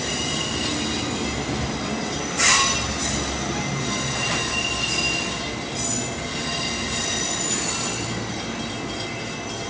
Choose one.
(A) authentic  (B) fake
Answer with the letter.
A